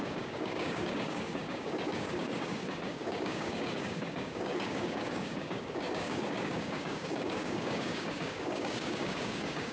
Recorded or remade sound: remade